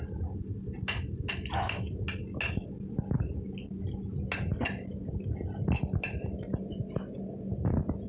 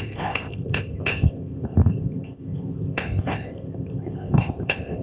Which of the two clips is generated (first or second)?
second